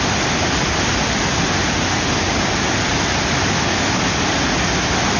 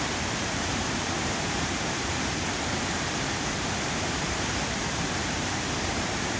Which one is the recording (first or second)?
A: first